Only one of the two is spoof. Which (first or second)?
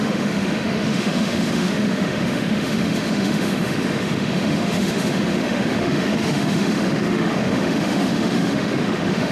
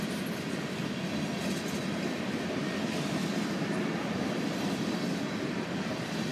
first